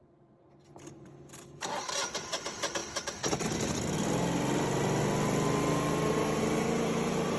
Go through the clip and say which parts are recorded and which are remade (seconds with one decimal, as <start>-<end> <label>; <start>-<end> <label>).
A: 0.0-2.8 remade; 2.8-6.1 recorded; 6.1-7.4 remade